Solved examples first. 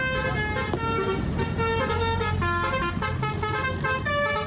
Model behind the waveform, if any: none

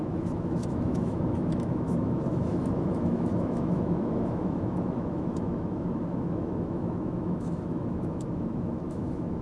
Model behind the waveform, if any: autoencoder, DAC-VAE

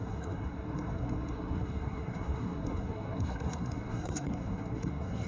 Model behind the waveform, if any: codec, SNAC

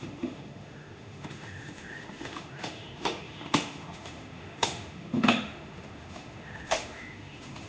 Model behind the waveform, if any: autoencoder, DAC-VAE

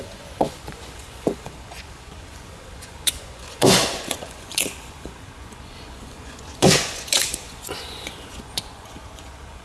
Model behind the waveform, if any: vocoder, Vocos